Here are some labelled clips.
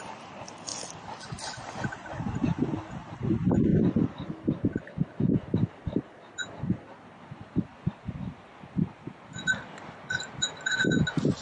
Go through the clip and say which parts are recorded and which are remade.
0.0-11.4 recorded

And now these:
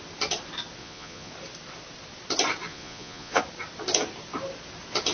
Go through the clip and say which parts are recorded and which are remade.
0.0-0.8 recorded; 0.8-1.3 remade; 1.3-2.7 recorded; 2.7-3.4 remade; 3.4-5.1 recorded

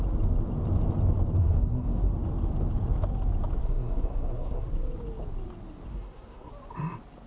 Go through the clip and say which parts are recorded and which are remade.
0.0-1.4 recorded; 1.4-2.1 remade; 2.1-3.6 recorded; 3.6-4.7 remade; 4.7-5.9 recorded; 5.9-6.5 remade; 6.5-7.3 recorded